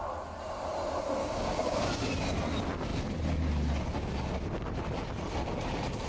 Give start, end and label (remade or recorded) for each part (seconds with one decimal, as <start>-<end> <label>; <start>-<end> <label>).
0.0-1.2 recorded; 1.2-1.9 remade; 1.9-6.1 recorded